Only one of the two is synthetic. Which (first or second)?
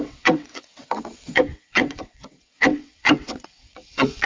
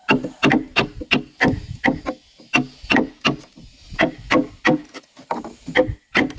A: first